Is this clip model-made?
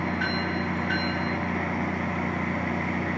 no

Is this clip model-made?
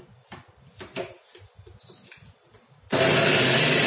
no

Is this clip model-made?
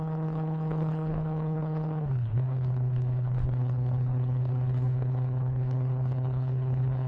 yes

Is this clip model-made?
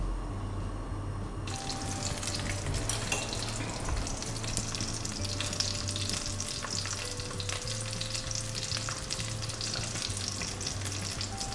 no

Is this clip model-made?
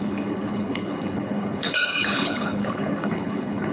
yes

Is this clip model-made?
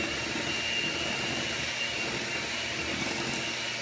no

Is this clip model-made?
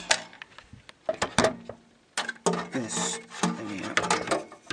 no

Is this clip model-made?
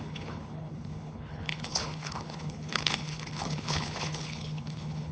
yes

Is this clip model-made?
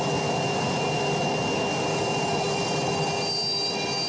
no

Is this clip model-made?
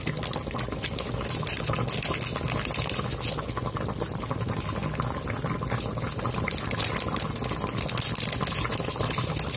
no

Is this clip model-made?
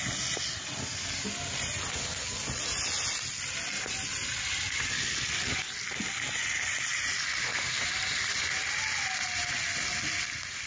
no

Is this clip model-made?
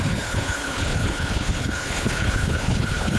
yes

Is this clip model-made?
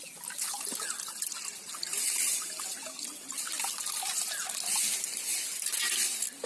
no